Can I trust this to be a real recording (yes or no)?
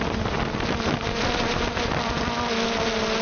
yes